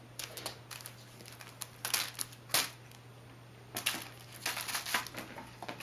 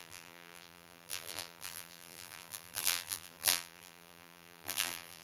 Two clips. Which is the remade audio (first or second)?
second